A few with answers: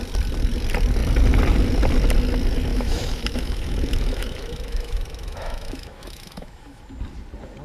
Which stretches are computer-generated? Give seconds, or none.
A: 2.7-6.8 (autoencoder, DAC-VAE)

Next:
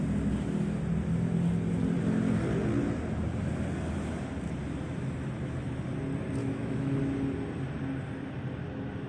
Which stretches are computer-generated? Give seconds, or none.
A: 6.4-7.0 (autoencoder, DAC-VAE)

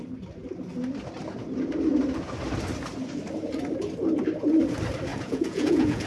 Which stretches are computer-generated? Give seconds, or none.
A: 5.1-6.1 (vocoder, Vocos)

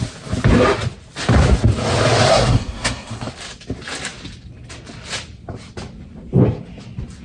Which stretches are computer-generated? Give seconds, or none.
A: 2.3-3.3 (codec, SNAC)

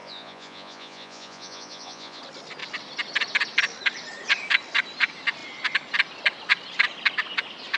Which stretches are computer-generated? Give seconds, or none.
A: 0.0-2.2 (vocoder, Vocos)

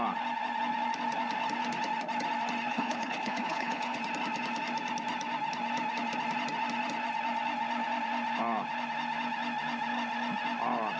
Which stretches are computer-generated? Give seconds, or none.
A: 2.7-4.0 (codec, HILCodec)